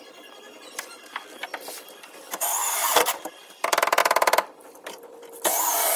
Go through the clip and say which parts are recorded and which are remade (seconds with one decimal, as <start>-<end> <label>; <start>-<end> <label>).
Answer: 0.0-6.0 remade